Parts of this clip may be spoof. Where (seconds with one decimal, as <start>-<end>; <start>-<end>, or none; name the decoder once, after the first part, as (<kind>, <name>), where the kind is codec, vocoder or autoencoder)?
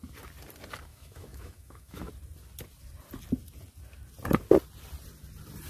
0.9-2.1 (autoencoder, DAC-VAE)